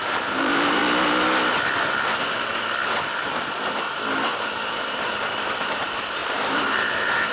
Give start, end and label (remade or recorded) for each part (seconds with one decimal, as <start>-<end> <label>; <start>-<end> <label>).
0.0-0.8 remade; 0.8-4.4 recorded; 4.4-7.3 remade